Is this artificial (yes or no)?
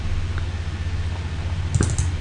no